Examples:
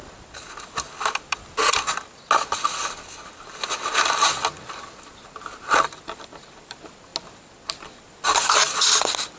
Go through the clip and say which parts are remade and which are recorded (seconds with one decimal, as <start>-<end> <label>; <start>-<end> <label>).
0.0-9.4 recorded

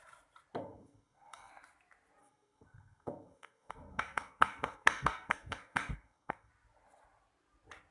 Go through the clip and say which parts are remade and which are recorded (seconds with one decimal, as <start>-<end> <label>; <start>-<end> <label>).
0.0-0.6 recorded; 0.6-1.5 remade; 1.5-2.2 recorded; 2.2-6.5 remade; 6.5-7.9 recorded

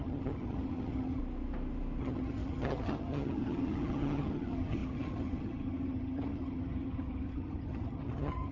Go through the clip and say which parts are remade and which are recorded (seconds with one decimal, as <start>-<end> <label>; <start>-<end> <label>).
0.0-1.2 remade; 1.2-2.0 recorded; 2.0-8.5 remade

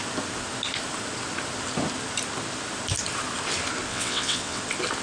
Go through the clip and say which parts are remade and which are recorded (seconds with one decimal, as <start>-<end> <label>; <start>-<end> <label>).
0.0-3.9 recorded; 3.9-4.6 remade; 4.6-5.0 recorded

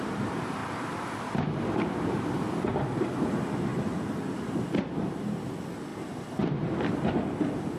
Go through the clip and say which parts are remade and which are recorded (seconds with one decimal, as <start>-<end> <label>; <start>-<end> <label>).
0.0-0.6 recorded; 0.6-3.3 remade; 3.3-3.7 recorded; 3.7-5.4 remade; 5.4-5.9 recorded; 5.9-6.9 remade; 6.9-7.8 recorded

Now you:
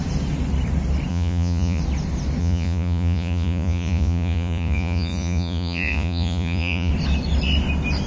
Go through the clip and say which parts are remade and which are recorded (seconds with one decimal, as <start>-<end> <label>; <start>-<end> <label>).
0.0-1.1 recorded; 1.1-1.8 remade; 1.8-2.4 recorded; 2.4-6.9 remade; 6.9-8.1 recorded

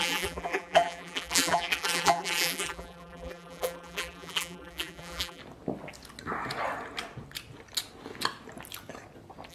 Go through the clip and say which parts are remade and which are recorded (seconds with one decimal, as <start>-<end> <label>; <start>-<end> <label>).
0.0-5.4 remade; 5.4-9.5 recorded

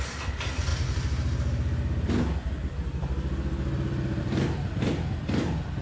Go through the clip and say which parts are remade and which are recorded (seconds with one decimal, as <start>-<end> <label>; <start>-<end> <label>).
0.0-0.7 remade; 0.7-4.2 recorded; 4.2-5.8 remade